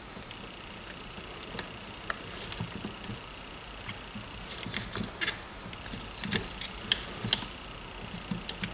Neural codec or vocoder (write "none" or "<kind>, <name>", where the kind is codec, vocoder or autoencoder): none